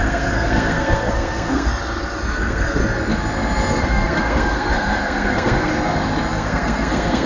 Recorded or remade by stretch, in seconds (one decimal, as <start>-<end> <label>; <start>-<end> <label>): 0.0-1.7 remade; 1.7-2.3 recorded; 2.3-2.8 remade; 2.8-3.7 recorded; 3.7-5.7 remade; 5.7-6.3 recorded; 6.3-7.3 remade